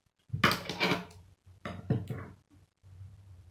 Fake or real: real